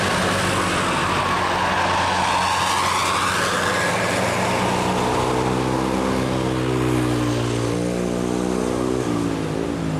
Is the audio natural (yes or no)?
yes